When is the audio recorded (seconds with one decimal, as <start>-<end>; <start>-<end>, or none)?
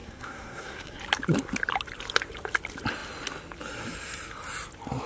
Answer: 1.0-5.1